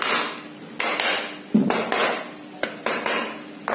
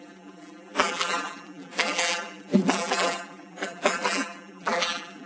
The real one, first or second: first